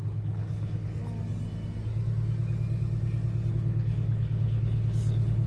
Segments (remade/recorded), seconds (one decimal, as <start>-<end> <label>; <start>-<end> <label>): 0.0-1.0 remade; 1.0-3.5 recorded; 3.5-5.5 remade